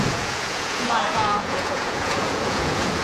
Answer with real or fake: fake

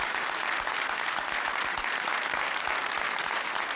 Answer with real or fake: real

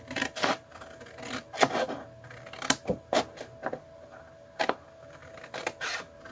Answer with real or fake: real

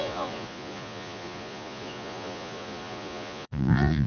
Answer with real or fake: fake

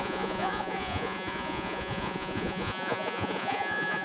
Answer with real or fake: fake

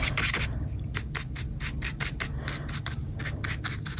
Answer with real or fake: real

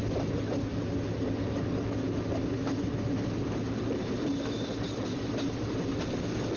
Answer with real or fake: real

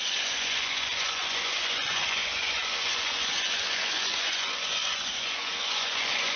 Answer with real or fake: fake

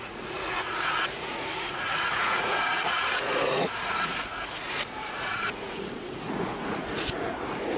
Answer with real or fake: fake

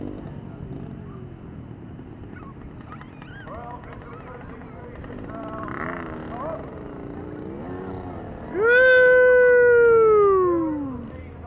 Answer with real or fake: real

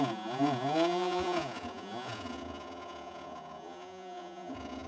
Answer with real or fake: fake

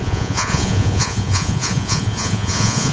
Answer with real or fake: fake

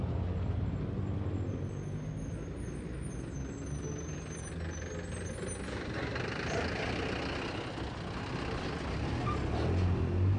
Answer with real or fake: real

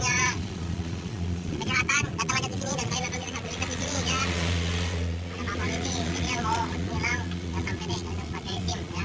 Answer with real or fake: fake